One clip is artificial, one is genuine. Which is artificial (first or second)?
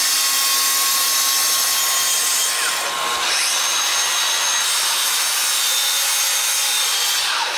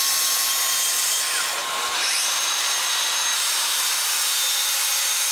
second